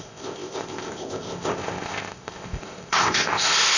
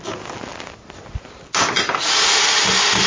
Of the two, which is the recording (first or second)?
second